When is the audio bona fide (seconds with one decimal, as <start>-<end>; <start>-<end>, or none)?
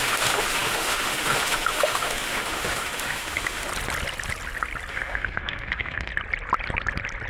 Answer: 3.7-4.9; 6.1-7.3